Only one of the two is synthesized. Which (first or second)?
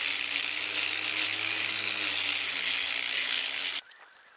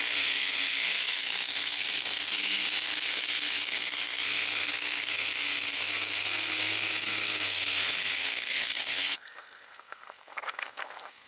second